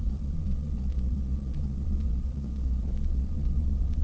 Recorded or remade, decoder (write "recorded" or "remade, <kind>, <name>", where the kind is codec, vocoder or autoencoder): remade, vocoder, Vocos